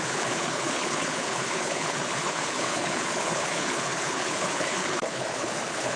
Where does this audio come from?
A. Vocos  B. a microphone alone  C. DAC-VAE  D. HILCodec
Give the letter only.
D